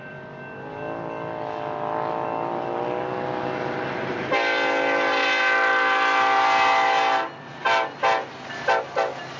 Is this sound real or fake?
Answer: real